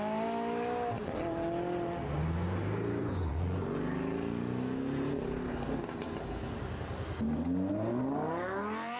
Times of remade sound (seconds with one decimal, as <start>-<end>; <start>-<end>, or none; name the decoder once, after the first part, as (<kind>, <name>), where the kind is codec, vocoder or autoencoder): 3.0-3.6 (vocoder, Vocos)